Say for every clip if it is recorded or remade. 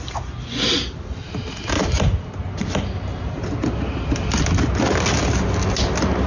recorded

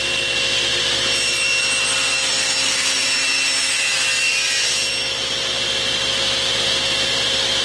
recorded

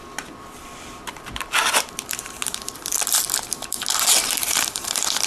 remade